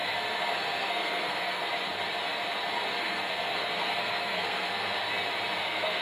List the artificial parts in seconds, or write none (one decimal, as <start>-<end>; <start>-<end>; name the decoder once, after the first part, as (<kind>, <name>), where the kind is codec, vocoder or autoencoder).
0.0-1.7 (codec, SNAC); 3.0-5.0; 5.6-6.0